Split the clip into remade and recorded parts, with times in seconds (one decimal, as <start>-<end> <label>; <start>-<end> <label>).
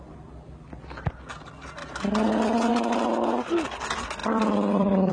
0.0-2.7 recorded; 2.7-3.3 remade; 3.3-4.2 recorded; 4.2-5.1 remade